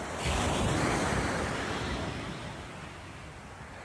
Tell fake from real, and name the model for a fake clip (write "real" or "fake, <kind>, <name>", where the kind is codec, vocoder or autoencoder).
fake, vocoder, BigVGAN v2